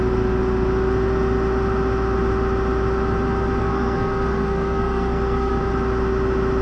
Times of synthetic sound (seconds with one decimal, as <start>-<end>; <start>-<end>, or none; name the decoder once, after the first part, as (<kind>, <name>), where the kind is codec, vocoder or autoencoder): 3.6-5.6 (codec, SNAC)